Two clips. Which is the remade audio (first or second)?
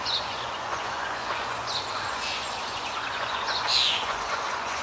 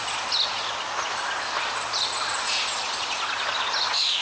first